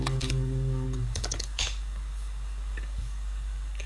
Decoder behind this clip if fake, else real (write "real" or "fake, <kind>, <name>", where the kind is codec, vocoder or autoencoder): fake, codec, DAC